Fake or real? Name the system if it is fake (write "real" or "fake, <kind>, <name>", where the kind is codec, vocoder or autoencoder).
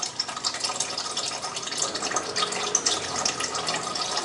real